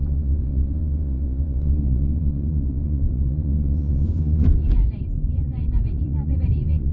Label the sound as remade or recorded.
remade